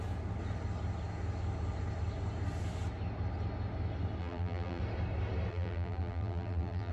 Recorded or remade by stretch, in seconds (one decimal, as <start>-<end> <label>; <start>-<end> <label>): 0.0-4.2 recorded; 4.2-4.8 remade; 4.8-5.5 recorded; 5.5-6.9 remade